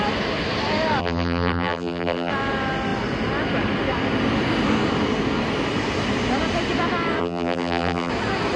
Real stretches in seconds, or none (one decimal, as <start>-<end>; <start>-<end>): 0.0-1.0; 2.3-7.2; 8.1-8.6

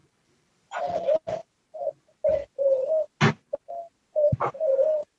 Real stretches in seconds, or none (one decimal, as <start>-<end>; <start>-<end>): 0.8-5.2

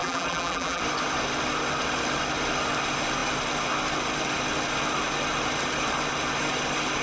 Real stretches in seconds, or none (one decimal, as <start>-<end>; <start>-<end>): 0.8-7.0

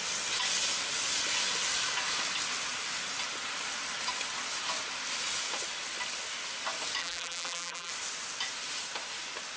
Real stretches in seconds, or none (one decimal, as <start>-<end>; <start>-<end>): 0.0-7.0; 7.9-9.6

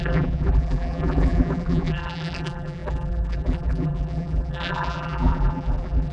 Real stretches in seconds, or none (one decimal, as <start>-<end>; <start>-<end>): none

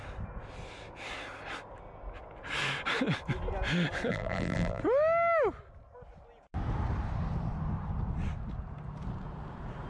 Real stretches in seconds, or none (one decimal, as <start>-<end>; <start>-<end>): 0.0-4.1; 4.8-9.9

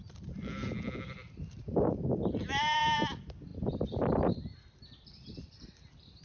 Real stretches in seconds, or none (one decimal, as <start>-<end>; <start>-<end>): 0.6-1.3